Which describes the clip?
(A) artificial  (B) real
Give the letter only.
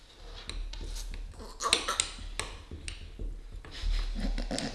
B